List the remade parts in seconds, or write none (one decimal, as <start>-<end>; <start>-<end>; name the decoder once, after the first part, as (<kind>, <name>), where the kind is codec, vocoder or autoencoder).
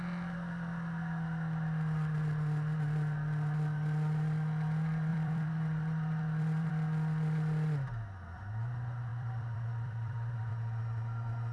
5.1-6.7 (vocoder, BigVGAN v2); 9.1-10.5